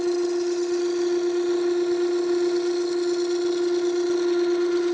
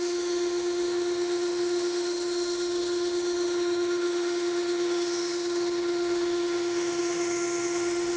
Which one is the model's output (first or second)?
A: second